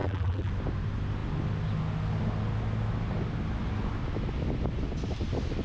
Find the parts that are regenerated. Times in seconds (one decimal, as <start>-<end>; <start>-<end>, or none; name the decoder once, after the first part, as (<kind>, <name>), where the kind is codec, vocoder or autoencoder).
0.0-0.5 (vocoder, BigVGAN v2)